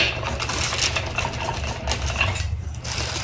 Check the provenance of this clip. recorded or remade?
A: recorded